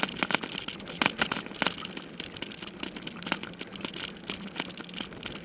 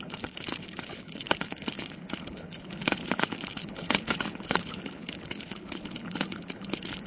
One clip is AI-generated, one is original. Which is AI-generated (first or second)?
second